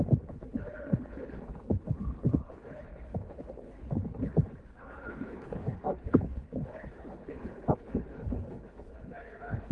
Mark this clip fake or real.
fake